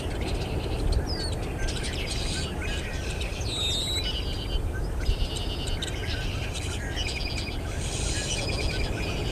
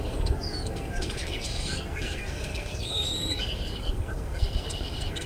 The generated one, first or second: second